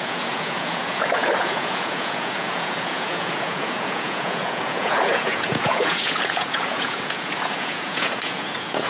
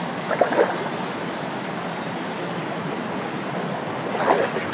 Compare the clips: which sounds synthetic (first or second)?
first